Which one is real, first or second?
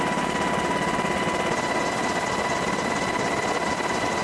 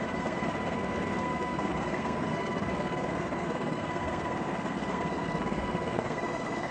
first